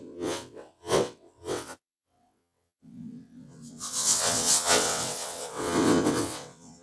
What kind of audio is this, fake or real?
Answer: fake